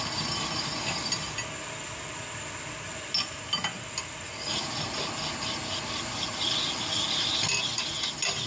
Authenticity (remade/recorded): recorded